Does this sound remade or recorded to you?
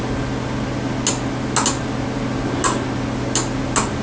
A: recorded